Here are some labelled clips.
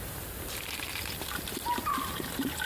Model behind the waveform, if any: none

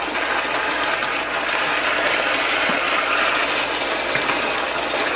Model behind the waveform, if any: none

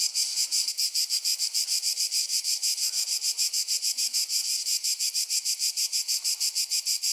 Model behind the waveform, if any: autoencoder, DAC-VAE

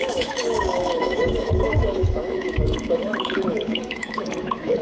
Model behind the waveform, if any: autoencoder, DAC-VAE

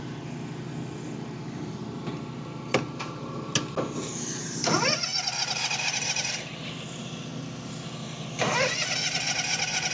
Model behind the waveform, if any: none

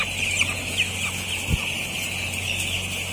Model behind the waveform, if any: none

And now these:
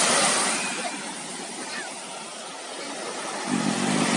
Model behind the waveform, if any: none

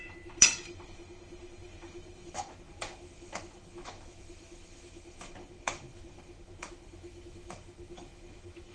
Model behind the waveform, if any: autoencoder, DAC-VAE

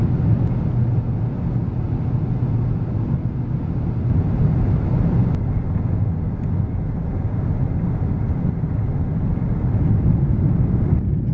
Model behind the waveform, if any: none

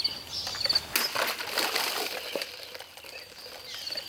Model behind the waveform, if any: none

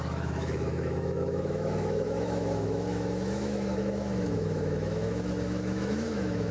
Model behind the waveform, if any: autoencoder, DAC-VAE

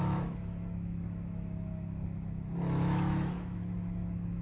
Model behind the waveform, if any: autoencoder, DAC-VAE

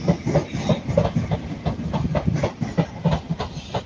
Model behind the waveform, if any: none